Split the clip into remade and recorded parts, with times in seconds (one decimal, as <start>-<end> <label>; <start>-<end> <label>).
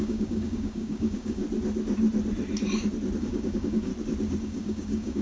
0.0-1.4 remade; 1.4-3.2 recorded; 3.2-3.9 remade; 3.9-4.4 recorded; 4.4-5.2 remade